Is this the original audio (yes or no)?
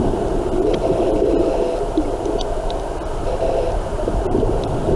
yes